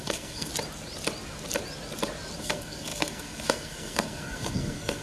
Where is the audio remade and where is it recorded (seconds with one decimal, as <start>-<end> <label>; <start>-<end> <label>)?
0.0-0.5 remade; 0.5-2.4 recorded; 2.4-5.0 remade